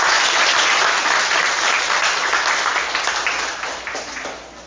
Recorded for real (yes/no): yes